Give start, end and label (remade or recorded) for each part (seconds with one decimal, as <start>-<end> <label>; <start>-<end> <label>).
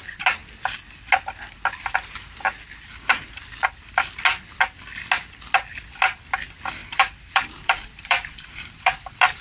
0.0-6.8 recorded; 6.8-8.9 remade; 8.9-9.4 recorded